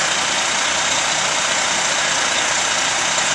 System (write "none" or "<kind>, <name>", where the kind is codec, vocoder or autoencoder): none